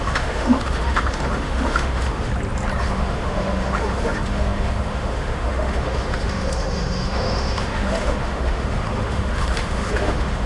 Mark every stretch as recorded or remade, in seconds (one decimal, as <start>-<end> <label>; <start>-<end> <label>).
0.0-2.3 remade; 2.3-2.8 recorded; 2.8-10.5 remade